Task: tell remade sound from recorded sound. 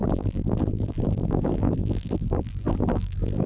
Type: remade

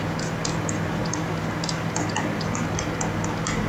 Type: recorded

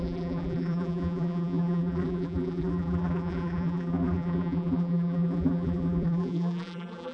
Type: remade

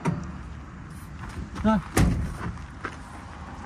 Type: recorded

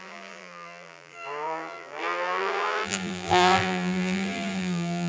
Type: remade